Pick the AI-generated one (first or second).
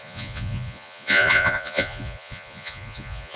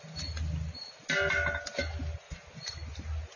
first